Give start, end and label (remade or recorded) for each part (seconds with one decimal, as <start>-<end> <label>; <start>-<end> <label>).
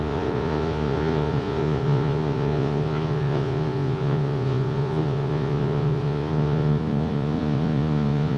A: 0.0-8.4 remade